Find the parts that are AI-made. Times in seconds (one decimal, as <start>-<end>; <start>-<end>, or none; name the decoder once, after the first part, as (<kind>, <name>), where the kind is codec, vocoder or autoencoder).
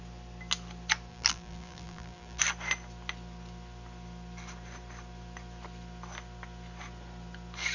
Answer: 1.1-2.4 (vocoder, BigVGAN v2)